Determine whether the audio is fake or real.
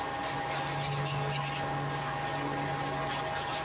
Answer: real